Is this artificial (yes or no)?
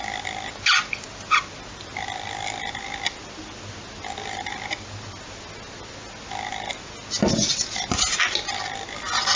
no